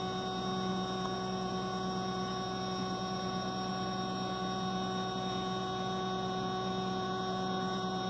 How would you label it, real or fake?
fake